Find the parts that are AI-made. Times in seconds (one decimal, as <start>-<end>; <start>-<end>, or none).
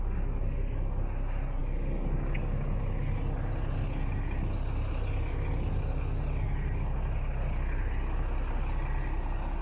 none